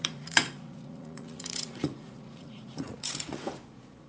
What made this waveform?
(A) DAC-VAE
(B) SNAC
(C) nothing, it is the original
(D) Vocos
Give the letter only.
D